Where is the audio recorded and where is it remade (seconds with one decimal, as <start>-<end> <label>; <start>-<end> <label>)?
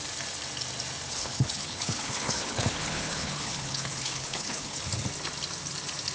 0.0-1.1 recorded; 1.1-4.8 remade; 4.8-6.1 recorded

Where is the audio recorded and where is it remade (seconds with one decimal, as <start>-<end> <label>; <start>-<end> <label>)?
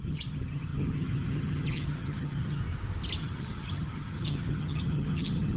0.0-2.6 remade; 2.6-3.2 recorded; 3.2-5.6 remade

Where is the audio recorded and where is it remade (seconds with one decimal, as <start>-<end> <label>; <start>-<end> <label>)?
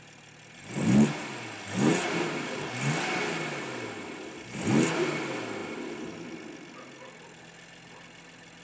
0.0-8.6 recorded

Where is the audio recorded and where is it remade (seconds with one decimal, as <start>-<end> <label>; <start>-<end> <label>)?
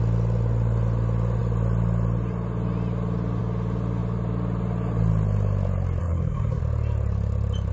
0.0-6.0 recorded; 6.0-6.6 remade; 6.6-7.7 recorded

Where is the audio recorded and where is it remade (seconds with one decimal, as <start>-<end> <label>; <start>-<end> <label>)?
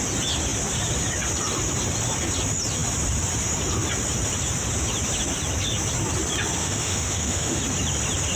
0.0-6.6 recorded; 6.6-7.6 remade; 7.6-8.4 recorded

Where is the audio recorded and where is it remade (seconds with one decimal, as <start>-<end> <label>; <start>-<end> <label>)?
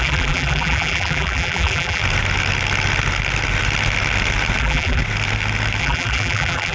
0.0-2.0 remade; 2.0-4.6 recorded; 4.6-5.0 remade; 5.0-5.8 recorded; 5.8-6.7 remade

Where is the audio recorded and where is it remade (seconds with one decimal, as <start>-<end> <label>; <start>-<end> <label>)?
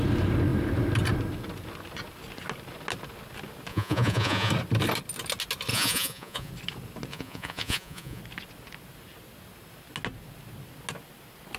0.0-3.7 recorded; 3.7-4.5 remade; 4.5-5.7 recorded; 5.7-6.5 remade; 6.5-7.1 recorded; 7.1-8.2 remade; 8.2-11.6 recorded